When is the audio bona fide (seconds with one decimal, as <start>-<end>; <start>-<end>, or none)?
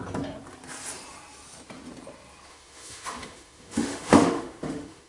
0.0-2.5